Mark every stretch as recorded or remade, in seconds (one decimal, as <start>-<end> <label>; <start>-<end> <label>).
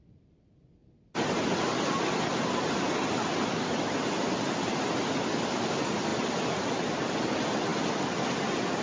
0.0-0.8 remade; 0.8-4.5 recorded; 4.5-7.7 remade; 7.7-8.8 recorded